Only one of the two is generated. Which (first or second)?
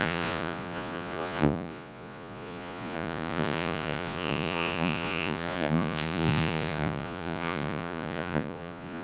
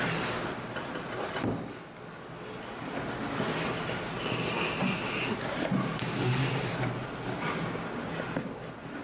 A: first